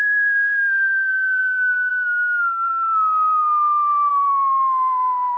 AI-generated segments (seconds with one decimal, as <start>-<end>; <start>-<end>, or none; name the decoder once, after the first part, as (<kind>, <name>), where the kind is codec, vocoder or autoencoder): none